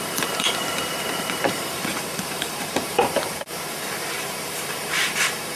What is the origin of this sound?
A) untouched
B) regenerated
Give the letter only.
B